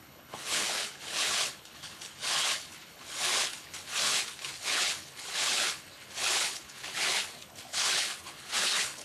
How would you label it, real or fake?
fake